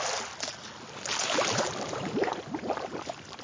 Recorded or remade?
recorded